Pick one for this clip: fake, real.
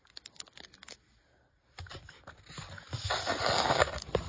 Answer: real